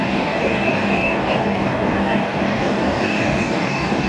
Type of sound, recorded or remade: remade